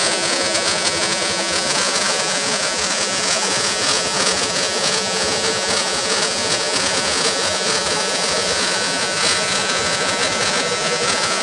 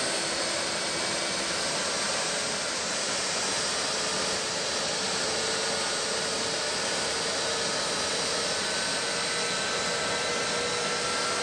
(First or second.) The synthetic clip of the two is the first